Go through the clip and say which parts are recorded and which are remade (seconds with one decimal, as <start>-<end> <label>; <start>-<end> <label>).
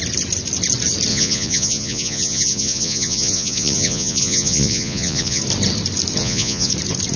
0.0-1.1 recorded; 1.1-5.4 remade; 5.4-6.2 recorded; 6.2-6.7 remade; 6.7-7.2 recorded